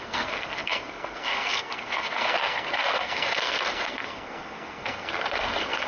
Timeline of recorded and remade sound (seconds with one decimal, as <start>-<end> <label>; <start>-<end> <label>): 0.0-5.9 remade